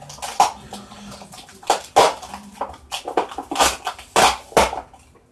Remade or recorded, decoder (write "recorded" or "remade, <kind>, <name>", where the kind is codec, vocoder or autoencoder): recorded